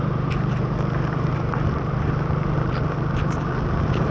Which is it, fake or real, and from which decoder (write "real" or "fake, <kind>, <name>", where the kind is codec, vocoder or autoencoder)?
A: real